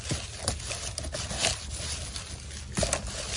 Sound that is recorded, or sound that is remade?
recorded